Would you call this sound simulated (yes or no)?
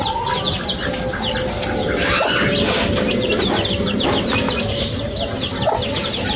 no